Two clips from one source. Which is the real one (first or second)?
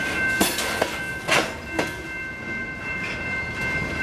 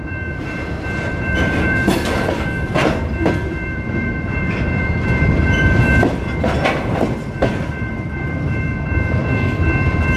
first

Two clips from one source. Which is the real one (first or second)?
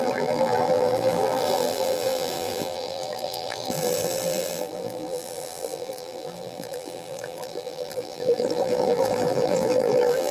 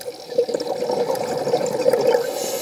second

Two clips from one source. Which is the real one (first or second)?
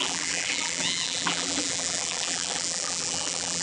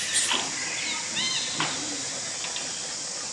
second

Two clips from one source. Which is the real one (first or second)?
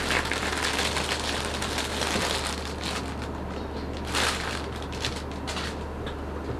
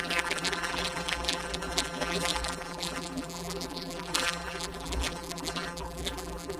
first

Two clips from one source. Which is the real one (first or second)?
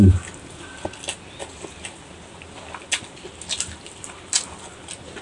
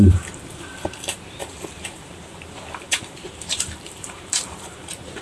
first